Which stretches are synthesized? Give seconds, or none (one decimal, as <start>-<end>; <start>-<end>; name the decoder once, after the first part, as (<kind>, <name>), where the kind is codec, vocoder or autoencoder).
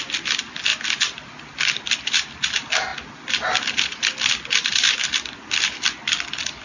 none